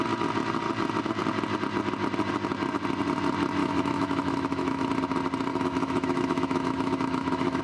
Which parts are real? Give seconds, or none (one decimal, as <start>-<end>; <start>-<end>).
0.0-3.6; 4.9-5.5